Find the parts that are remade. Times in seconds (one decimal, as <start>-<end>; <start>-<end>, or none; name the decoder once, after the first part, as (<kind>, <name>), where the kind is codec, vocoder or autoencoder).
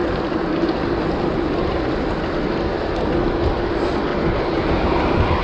none